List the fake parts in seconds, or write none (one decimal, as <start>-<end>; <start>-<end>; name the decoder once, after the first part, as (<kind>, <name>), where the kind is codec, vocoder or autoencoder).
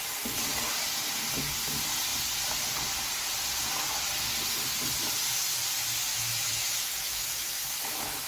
6.1-8.3 (autoencoder, DAC-VAE)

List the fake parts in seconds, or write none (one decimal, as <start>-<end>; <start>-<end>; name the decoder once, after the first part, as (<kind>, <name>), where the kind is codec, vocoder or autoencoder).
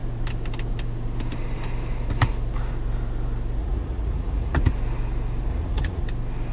3.6-4.7 (vocoder, Vocos); 5.5-6.0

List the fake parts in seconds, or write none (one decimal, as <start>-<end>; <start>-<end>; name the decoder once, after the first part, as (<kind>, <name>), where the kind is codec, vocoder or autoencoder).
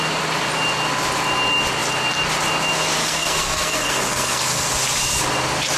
3.0-4.7 (codec, SNAC)